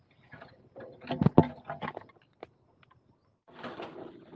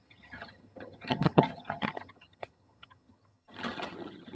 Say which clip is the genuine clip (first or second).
first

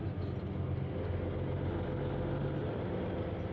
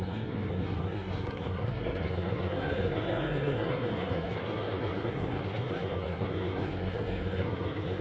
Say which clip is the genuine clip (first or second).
first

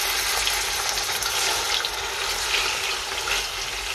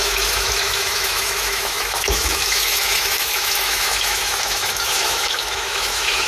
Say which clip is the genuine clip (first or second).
first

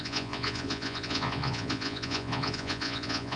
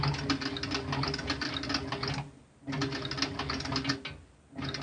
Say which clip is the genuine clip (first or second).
second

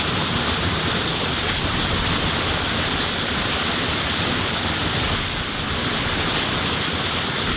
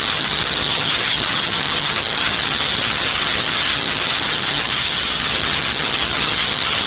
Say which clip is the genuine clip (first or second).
first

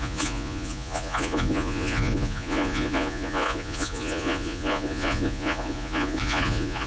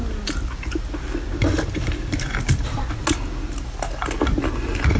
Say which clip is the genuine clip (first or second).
second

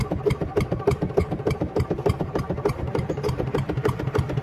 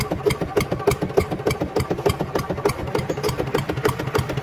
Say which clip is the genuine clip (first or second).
second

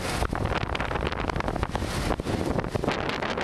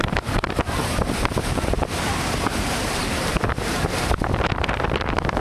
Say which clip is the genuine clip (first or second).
first